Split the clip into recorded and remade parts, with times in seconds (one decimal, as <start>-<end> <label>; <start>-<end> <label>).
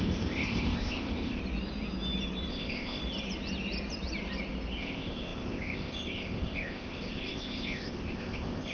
0.0-1.4 remade; 1.4-2.5 recorded; 2.5-3.0 remade; 3.0-4.8 recorded; 4.8-8.7 remade